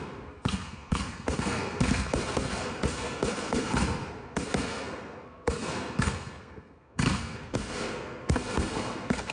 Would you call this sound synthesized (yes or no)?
yes